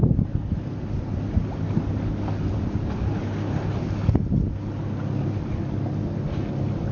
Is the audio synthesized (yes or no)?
no